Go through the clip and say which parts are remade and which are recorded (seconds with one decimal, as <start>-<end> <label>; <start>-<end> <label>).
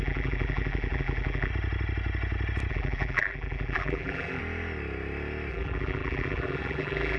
0.0-1.5 remade; 1.5-2.7 recorded; 2.7-4.4 remade; 4.4-5.5 recorded; 5.5-7.2 remade